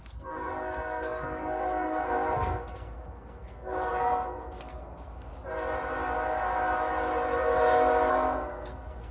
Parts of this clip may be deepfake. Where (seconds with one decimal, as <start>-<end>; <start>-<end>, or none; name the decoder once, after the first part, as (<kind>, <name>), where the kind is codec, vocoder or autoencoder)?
0.0-5.3 (codec, SNAC); 8.1-9.1